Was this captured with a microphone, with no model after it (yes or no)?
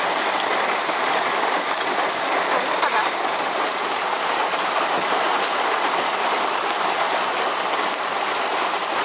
yes